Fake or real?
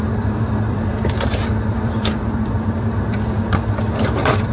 fake